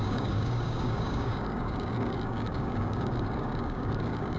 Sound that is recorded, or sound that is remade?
remade